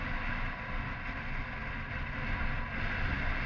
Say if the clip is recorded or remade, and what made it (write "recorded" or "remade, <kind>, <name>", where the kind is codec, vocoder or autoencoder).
recorded